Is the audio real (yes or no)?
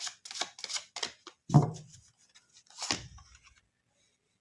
yes